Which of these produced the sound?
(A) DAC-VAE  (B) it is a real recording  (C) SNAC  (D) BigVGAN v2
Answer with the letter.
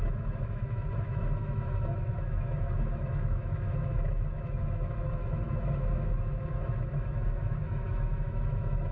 A